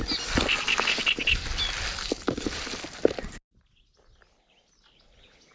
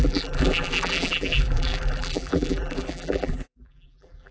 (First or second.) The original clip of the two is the first